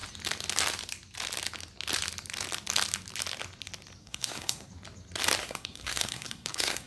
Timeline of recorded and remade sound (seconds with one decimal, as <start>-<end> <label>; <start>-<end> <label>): 0.0-4.0 recorded; 4.0-4.7 remade; 4.7-5.4 recorded; 5.4-6.9 remade